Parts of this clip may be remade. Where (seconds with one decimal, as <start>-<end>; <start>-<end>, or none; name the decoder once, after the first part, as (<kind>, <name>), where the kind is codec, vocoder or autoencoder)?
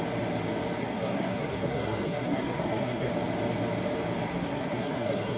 0.8-3.1 (codec, SNAC); 4.3-5.4